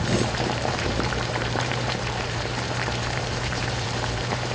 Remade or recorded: remade